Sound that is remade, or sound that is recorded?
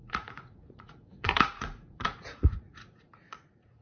remade